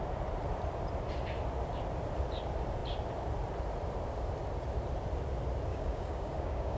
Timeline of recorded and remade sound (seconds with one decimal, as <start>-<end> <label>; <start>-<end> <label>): 0.0-5.7 recorded; 5.7-6.8 remade